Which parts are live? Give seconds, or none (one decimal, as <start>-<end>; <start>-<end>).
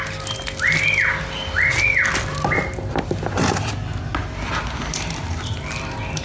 0.0-6.2